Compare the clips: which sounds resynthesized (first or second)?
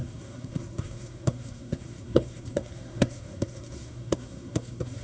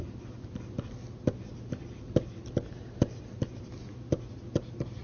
first